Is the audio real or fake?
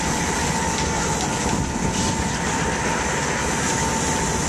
real